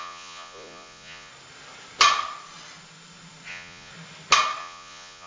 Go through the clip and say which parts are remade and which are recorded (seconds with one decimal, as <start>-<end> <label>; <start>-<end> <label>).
0.0-1.3 remade; 1.3-3.5 recorded; 3.5-3.9 remade; 3.9-4.6 recorded; 4.6-5.3 remade